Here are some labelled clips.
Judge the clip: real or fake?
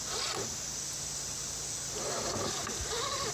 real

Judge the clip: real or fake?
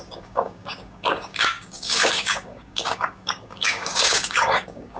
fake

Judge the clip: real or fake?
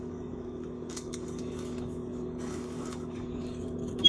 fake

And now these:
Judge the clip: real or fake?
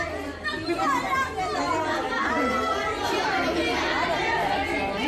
real